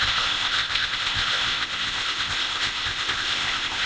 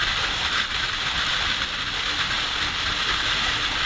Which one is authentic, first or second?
second